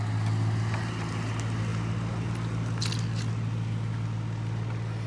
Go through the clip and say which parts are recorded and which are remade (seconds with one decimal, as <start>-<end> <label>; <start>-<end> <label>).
0.0-5.1 recorded